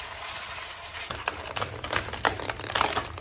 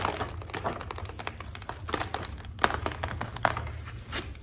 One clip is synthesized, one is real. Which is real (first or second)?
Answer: second